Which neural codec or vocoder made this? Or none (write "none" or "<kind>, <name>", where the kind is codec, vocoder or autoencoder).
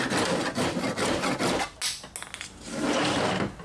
none